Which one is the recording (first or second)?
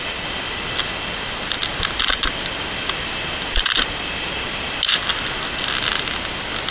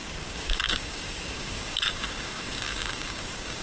first